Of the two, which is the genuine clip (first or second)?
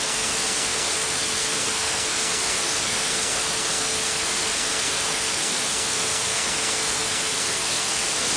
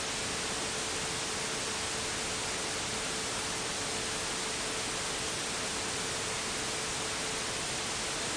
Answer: second